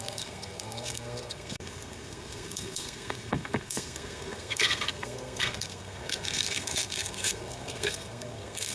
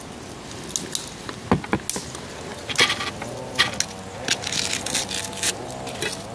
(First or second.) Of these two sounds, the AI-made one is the first